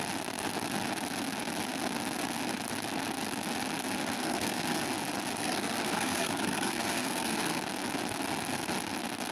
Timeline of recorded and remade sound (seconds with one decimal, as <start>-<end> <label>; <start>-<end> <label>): 0.0-4.2 recorded; 4.2-4.8 remade; 4.8-5.4 recorded; 5.4-7.6 remade; 7.6-9.3 recorded